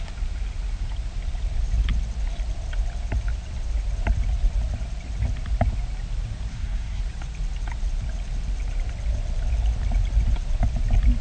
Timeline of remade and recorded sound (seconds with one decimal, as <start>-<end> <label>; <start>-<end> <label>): 0.0-6.5 recorded; 6.5-7.0 remade; 7.0-11.2 recorded